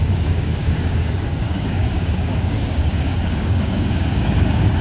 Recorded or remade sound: remade